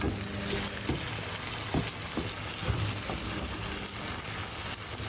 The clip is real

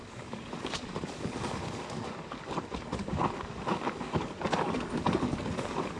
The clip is fake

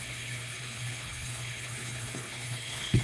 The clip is fake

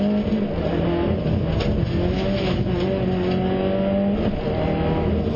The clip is real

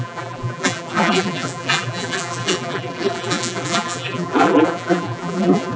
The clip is fake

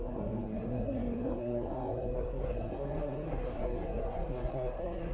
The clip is fake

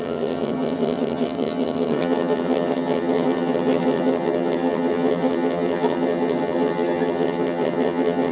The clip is fake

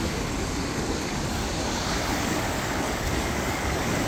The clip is fake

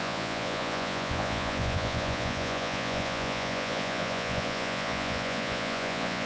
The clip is fake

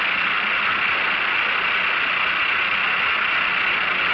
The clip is real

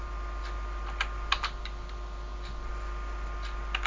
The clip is real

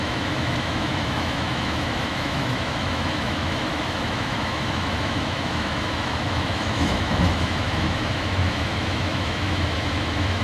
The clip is fake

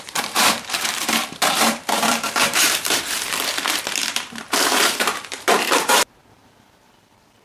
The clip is fake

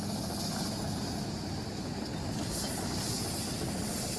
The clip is real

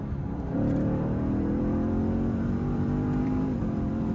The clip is fake